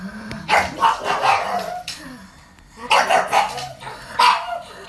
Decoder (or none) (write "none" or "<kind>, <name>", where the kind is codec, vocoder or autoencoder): none